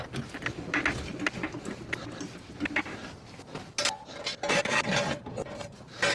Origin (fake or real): real